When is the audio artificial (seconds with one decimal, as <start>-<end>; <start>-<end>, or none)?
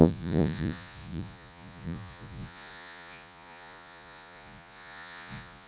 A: 0.0-5.7